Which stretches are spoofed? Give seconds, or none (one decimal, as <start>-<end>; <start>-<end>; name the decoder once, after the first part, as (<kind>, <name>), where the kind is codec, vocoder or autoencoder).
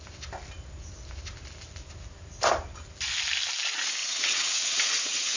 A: 4.0-5.4 (vocoder, WaveNeXt)